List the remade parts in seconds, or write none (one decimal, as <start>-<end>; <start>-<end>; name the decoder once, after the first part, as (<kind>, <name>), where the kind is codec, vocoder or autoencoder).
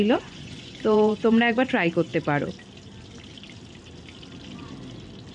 0.0-2.1 (vocoder, Vocos)